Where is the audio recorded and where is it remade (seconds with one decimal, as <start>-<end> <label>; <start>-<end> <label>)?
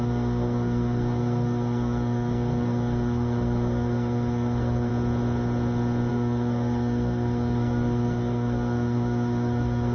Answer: 0.0-4.9 remade; 4.9-6.1 recorded; 6.1-9.9 remade